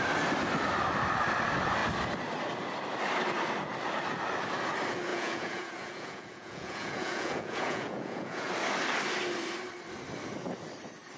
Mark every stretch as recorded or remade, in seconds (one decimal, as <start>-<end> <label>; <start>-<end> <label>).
0.0-5.1 recorded; 5.1-8.5 remade; 8.5-11.2 recorded